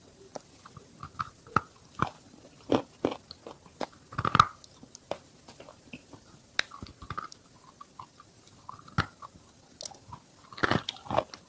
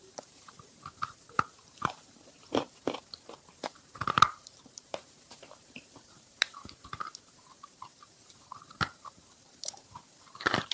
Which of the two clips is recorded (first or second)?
first